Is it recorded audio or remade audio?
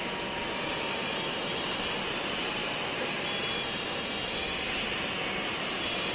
recorded